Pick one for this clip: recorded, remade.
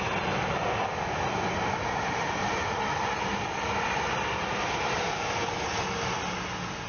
recorded